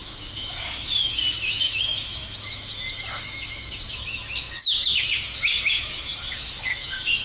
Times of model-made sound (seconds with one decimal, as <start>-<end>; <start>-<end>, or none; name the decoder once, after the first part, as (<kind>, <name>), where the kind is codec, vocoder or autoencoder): 0.0-7.2 (autoencoder, DAC-VAE)